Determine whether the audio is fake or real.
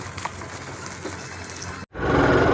real